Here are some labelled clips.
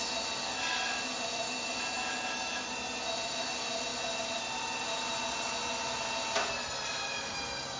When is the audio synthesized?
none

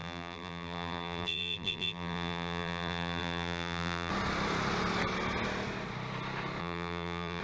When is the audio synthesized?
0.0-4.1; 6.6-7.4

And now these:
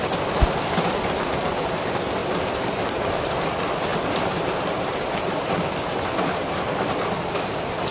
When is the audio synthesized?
none